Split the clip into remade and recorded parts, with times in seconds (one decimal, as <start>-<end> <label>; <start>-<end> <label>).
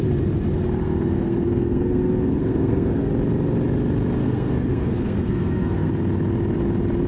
0.0-0.8 recorded; 0.8-3.1 remade; 3.1-4.2 recorded; 4.2-5.9 remade; 5.9-7.1 recorded